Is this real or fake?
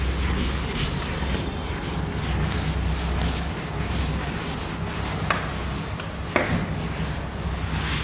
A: real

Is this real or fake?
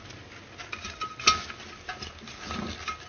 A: real